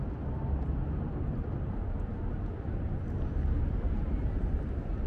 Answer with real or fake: real